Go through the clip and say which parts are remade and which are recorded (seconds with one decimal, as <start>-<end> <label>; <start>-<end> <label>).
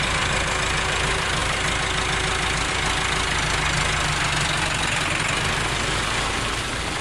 0.0-7.0 recorded